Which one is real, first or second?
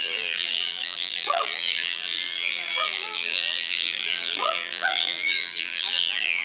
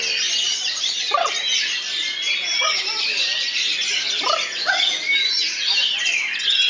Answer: second